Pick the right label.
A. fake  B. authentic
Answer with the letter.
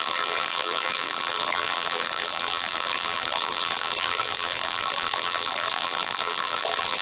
A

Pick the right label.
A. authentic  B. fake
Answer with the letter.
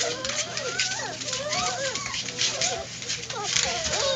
B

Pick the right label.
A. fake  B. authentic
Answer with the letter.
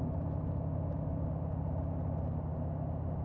B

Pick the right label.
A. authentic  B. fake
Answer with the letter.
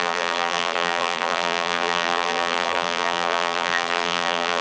B